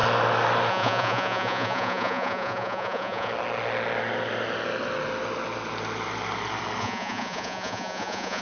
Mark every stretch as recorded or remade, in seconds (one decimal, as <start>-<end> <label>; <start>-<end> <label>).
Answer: 0.0-0.7 recorded; 0.7-3.3 remade; 3.3-6.8 recorded; 6.8-8.4 remade